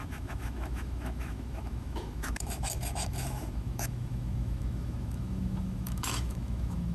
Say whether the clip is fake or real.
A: fake